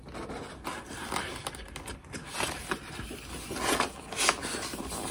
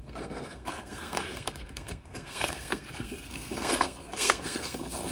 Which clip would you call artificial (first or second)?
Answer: second